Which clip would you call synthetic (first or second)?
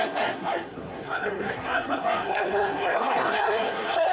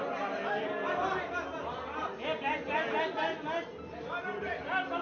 first